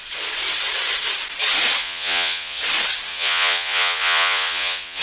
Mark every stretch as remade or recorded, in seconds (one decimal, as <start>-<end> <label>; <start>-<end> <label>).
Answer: 0.0-1.8 recorded; 1.8-2.6 remade; 2.6-3.1 recorded; 3.1-5.0 remade